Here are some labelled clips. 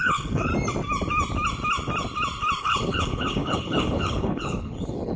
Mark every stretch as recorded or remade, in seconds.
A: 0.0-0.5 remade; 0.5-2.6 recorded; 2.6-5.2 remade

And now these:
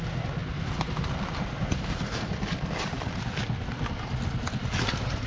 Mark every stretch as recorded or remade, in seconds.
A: 0.0-5.3 recorded

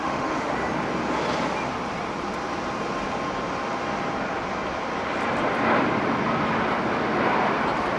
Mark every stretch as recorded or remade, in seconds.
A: 0.0-0.5 remade; 0.5-8.0 recorded

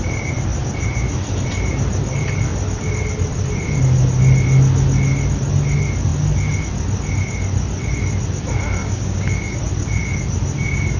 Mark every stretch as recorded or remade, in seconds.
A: 0.0-8.8 recorded; 8.8-9.6 remade; 9.6-11.0 recorded

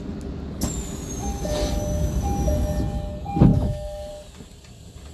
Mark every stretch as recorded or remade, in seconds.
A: 0.0-3.5 recorded; 3.5-4.1 remade; 4.1-5.1 recorded

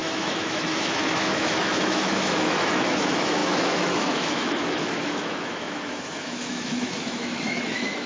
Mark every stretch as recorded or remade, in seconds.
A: 0.0-8.1 remade

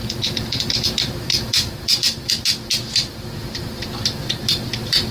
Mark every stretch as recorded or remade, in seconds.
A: 0.0-2.3 remade; 2.3-5.1 recorded

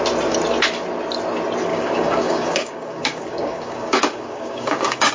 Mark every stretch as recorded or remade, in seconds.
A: 0.0-1.7 recorded; 1.7-5.1 remade